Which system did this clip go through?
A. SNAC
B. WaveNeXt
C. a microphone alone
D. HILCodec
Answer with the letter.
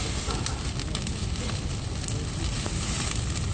C